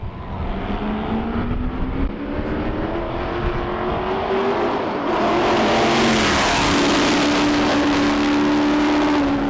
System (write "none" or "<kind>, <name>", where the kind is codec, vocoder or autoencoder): none